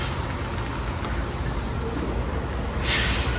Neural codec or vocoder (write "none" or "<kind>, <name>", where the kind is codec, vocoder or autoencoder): none